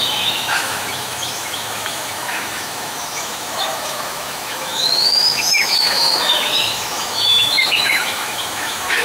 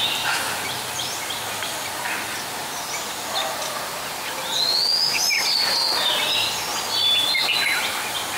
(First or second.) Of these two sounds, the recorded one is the second